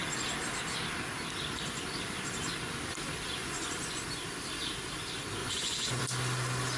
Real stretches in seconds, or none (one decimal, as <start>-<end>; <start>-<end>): 0.0-3.4; 4.0-5.4; 6.0-6.8